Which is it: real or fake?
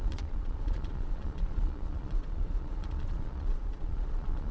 fake